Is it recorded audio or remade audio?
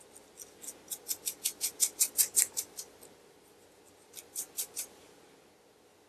recorded